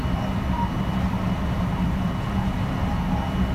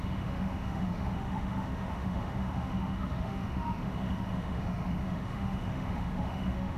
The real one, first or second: first